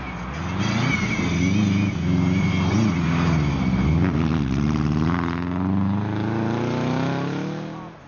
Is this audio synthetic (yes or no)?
no